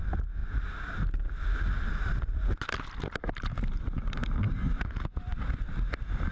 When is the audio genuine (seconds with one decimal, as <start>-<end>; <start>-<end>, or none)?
0.0-6.3